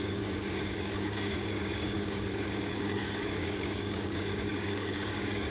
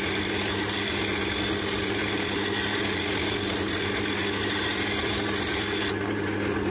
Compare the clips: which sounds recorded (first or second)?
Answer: second